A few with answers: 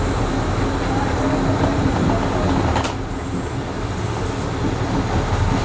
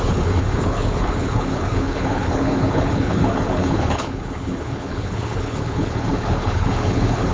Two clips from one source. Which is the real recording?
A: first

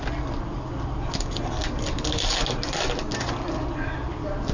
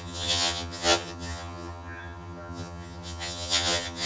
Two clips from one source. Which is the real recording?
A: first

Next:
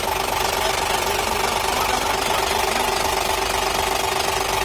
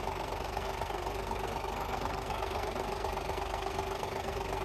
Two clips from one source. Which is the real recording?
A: first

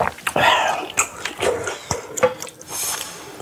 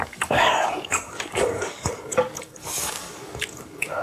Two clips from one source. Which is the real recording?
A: first